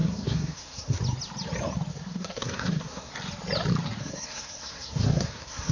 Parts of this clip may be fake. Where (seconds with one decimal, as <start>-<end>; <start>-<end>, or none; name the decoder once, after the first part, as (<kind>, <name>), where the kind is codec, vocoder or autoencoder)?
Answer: 0.0-1.0 (codec, SNAC); 1.9-3.1; 4.0-5.7